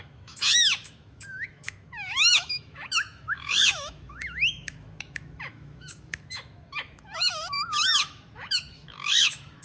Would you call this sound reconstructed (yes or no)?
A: yes